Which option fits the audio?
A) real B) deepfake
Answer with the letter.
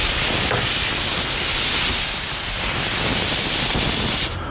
A